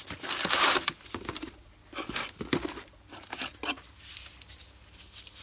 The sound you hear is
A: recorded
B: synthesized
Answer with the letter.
A